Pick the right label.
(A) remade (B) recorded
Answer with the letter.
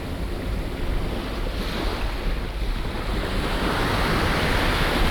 B